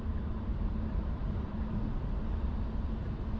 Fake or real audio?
real